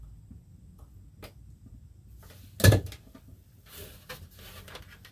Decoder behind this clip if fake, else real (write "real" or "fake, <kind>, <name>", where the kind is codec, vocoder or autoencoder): real